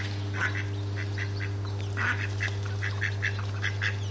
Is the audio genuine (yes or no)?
yes